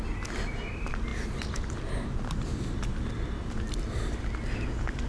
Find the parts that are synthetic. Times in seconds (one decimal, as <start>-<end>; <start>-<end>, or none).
none